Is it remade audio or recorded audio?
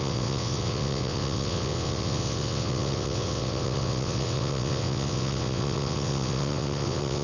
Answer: remade